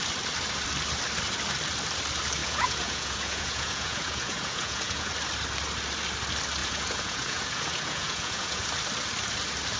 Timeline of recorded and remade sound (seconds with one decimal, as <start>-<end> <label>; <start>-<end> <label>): 0.0-2.4 recorded; 2.4-5.1 remade; 5.1-6.6 recorded; 6.6-8.7 remade; 8.7-9.8 recorded